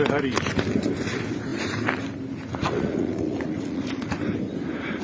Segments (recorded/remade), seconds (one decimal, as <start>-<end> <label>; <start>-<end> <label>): 0.0-2.6 recorded; 2.6-4.1 remade; 4.1-5.0 recorded

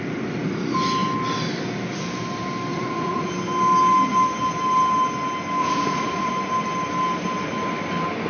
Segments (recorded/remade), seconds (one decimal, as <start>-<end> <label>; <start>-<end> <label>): 0.0-2.7 recorded; 2.7-3.3 remade; 3.3-5.6 recorded; 5.6-6.3 remade; 6.3-8.3 recorded

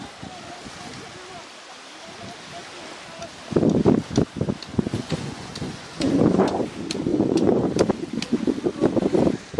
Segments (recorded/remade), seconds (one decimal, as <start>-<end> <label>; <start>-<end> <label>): 0.0-4.7 recorded; 4.7-6.6 remade; 6.6-7.1 recorded; 7.1-7.7 remade; 7.7-9.6 recorded

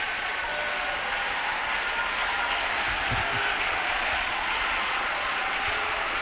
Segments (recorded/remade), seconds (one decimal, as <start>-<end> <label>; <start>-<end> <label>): 0.0-0.5 remade; 0.5-3.6 recorded; 3.6-6.2 remade